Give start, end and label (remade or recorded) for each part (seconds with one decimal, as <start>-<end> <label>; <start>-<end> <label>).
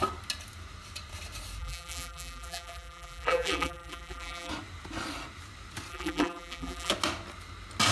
0.0-1.6 recorded; 1.6-4.5 remade; 4.5-5.9 recorded; 5.9-6.9 remade; 6.9-7.9 recorded